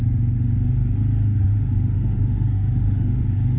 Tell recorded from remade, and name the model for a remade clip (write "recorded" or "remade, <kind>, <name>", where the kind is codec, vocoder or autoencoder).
remade, autoencoder, DAC-VAE